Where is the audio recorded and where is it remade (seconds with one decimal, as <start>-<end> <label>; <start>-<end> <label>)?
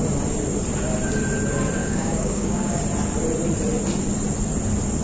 0.0-1.8 recorded; 1.8-2.8 remade; 2.8-5.0 recorded